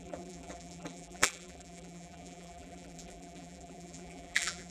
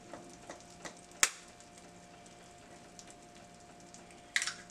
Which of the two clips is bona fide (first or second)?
second